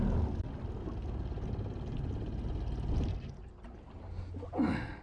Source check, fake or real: real